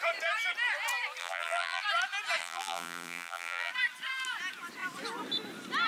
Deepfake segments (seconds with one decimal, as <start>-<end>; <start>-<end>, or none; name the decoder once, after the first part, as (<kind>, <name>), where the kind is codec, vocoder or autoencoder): 1.2-1.8 (vocoder, BigVGAN v2); 2.4-3.7